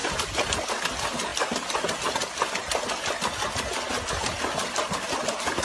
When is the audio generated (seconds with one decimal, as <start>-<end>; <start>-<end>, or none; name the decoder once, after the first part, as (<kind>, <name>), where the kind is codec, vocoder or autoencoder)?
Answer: none

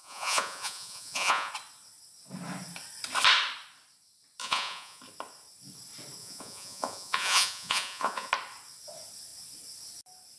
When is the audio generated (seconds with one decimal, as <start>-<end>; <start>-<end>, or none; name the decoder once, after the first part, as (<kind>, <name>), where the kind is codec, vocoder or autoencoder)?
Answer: 0.0-1.5 (vocoder, Vocos); 4.4-5.0; 6.2-8.3

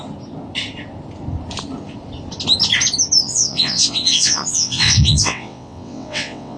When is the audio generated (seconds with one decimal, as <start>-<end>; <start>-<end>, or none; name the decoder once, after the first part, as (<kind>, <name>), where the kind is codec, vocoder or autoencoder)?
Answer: 3.2-6.6 (vocoder, WaveNeXt)

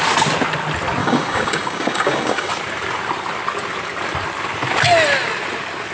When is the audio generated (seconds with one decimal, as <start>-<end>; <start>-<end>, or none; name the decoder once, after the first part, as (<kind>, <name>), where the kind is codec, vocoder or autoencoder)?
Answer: 1.0-2.5 (codec, DAC)

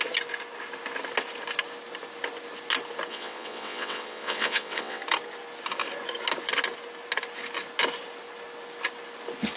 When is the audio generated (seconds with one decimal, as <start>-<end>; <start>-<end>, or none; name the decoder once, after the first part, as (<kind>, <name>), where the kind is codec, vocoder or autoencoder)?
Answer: 3.1-5.0 (vocoder, WaveNeXt)

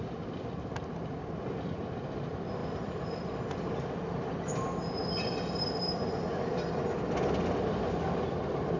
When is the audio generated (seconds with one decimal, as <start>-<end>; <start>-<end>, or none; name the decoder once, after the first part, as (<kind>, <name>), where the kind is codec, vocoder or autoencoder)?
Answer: none

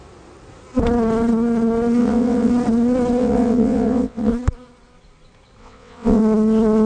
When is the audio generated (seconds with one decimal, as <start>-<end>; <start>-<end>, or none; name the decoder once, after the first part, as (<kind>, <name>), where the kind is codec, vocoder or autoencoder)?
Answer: 2.0-2.5 (vocoder, WaveNeXt); 3.2-4.3; 5.6-6.2

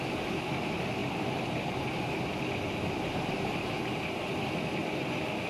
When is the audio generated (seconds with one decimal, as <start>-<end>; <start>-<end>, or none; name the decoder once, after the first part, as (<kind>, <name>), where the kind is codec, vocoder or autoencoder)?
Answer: 1.0-4.0 (vocoder, BigVGAN v2)